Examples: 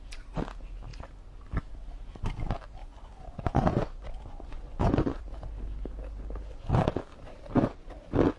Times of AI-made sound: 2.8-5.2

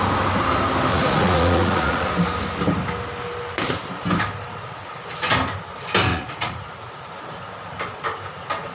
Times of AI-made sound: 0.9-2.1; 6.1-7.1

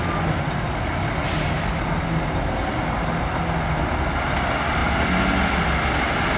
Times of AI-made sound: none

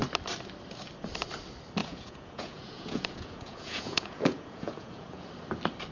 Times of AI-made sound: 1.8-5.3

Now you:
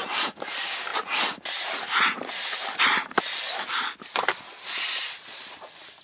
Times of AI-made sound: 4.5-5.4

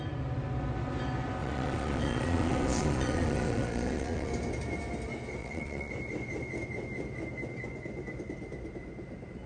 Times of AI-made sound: 1.4-4.3; 5.4-5.9